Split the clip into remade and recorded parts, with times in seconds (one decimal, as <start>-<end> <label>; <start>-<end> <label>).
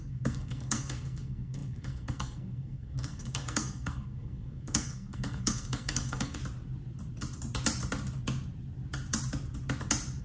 0.0-6.4 remade; 6.4-10.2 recorded